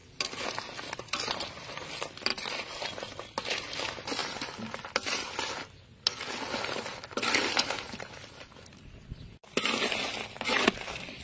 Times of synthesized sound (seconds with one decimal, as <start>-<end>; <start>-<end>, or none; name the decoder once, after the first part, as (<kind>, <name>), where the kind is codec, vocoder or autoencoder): 2.3-2.8 (vocoder, BigVGAN v2)